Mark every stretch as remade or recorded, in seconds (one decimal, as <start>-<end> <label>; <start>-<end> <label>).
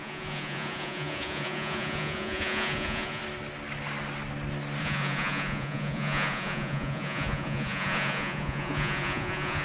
0.0-3.2 remade; 3.2-4.8 recorded; 4.8-9.6 remade